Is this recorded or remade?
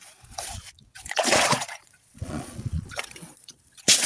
remade